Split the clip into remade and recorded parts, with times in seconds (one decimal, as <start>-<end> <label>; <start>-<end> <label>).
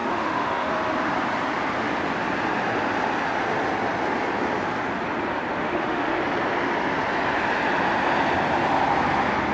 0.0-0.7 remade; 0.7-5.6 recorded; 5.6-6.2 remade; 6.2-9.5 recorded